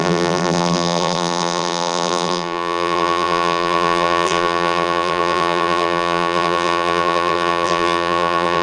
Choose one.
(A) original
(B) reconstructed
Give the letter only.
B